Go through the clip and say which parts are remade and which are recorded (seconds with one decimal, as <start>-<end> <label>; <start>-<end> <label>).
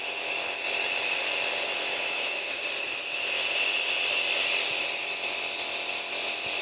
0.0-1.9 recorded; 1.9-2.6 remade; 2.6-6.6 recorded